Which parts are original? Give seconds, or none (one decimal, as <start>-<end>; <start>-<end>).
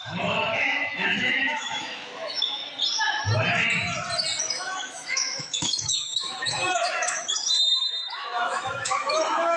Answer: 2.6-4.4